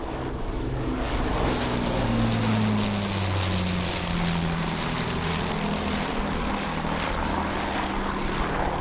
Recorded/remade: recorded